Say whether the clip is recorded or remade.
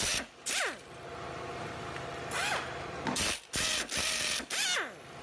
recorded